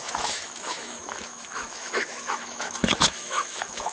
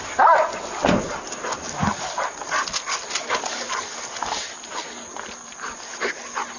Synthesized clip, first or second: first